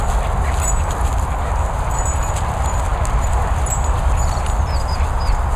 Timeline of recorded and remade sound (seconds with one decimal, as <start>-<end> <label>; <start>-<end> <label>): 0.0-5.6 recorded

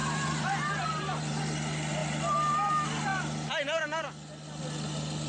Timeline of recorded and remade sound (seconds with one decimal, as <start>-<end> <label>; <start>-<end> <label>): 0.0-1.4 remade; 1.4-5.3 recorded

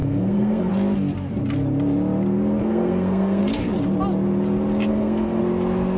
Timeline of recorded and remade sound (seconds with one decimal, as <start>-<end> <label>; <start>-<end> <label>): 0.0-0.7 remade; 0.7-2.6 recorded; 2.6-3.4 remade; 3.4-4.9 recorded; 4.9-5.4 remade; 5.4-6.0 recorded